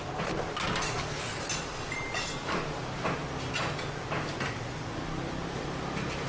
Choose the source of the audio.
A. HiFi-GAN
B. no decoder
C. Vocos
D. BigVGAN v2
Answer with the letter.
B